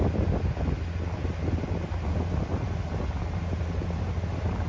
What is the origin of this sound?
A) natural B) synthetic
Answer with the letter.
A